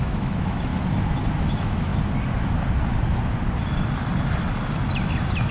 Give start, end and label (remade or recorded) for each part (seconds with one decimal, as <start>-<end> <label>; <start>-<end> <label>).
0.0-0.7 remade; 0.7-1.4 recorded; 1.4-1.9 remade; 1.9-5.5 recorded